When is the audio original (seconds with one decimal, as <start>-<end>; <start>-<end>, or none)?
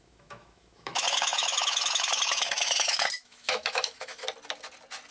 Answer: 4.2-5.1